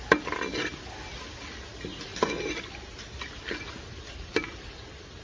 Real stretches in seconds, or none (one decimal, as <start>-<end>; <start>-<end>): 0.0-2.1

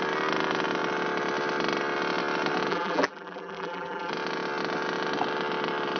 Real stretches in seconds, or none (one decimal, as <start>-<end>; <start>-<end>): 0.0-2.7; 4.1-6.0

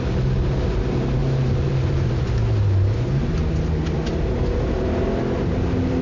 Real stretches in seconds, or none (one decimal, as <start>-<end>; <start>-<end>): 0.0-1.2; 2.1-6.0